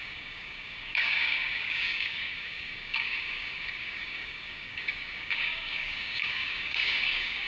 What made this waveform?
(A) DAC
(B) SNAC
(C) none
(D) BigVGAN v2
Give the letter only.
A